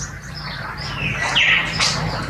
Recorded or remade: recorded